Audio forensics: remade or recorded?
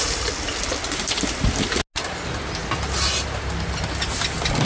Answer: recorded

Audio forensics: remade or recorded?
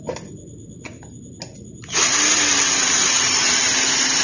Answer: recorded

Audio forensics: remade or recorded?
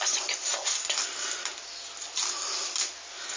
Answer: recorded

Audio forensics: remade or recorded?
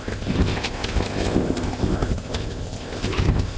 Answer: remade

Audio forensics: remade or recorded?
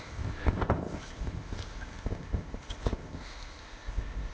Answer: remade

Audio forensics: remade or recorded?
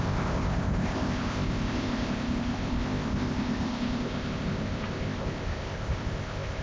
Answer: remade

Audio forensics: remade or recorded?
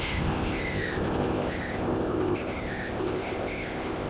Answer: remade